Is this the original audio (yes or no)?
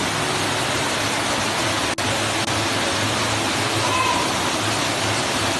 yes